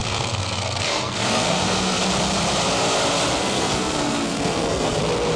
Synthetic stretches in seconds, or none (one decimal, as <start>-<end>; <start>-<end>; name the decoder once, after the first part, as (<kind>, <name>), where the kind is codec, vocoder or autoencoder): 0.0-2.1 (codec, SNAC); 3.4-5.0